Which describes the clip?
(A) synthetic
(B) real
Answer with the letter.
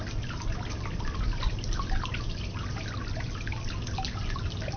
B